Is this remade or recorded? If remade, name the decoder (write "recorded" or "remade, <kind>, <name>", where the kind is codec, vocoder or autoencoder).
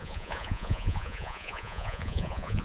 remade, vocoder, Vocos